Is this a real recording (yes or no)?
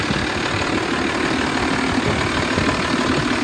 yes